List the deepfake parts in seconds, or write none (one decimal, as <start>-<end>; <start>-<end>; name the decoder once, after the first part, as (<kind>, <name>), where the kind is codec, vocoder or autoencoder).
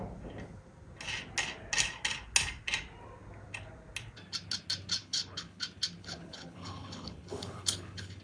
5.0-5.6 (codec, HILCodec); 6.0-8.2